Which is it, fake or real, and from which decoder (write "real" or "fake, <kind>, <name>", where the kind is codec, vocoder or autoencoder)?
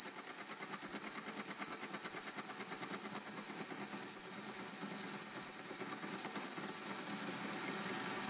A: real